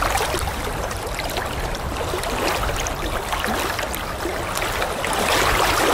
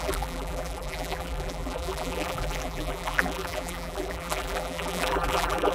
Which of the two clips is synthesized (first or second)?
second